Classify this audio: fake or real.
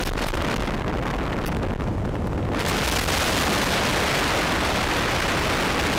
real